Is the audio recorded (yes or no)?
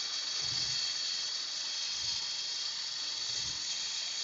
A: no